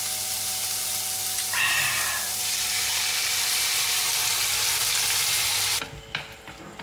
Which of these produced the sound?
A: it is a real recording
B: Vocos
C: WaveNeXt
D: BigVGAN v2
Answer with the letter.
A